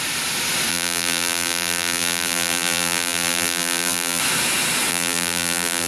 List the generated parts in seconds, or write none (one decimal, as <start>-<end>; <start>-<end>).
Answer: 0.7-4.2; 4.9-5.9